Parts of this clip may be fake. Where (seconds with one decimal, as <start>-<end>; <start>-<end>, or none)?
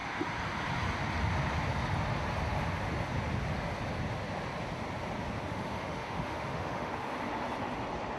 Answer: 5.5-6.9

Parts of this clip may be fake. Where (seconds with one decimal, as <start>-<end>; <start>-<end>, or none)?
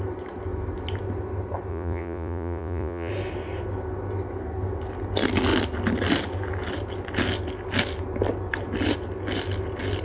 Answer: 1.7-3.1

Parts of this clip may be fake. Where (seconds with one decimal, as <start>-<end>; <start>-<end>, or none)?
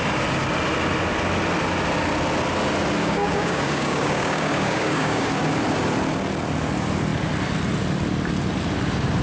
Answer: 3.0-5.3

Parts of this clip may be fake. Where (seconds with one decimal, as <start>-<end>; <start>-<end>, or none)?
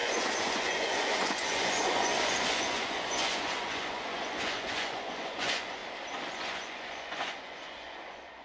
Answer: 0.0-5.8; 6.3-8.4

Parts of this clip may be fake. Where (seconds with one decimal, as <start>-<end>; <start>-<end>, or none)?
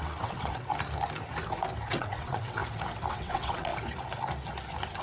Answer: 0.0-0.7; 1.9-2.6; 3.1-3.7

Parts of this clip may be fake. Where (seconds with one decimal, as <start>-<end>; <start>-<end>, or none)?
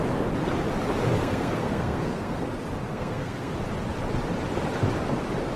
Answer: 1.2-2.5; 2.9-3.5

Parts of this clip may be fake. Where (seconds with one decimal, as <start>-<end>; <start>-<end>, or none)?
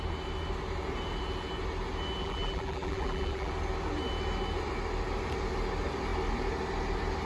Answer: 2.2-3.5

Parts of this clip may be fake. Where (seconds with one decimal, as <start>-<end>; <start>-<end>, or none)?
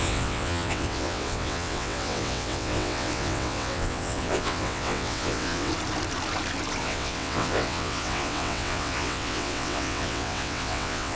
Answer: 0.0-5.7; 6.8-11.2